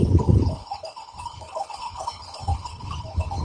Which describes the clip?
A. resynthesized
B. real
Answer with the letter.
A